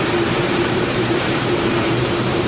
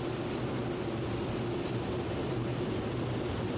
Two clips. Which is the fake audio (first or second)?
first